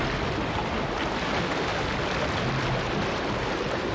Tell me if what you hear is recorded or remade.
recorded